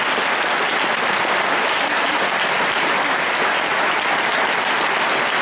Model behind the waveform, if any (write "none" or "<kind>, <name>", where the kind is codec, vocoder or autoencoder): none